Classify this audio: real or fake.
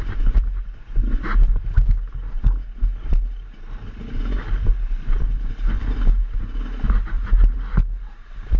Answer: real